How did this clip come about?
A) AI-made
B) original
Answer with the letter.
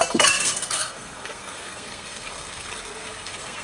A